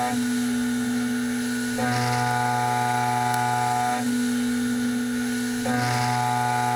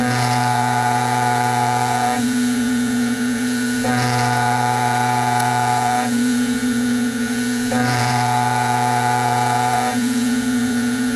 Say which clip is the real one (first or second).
first